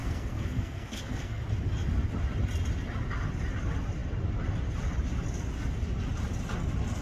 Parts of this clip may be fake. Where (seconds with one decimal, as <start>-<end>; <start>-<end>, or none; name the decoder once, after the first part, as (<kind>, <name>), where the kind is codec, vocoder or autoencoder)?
0.0-1.4 (codec, SNAC)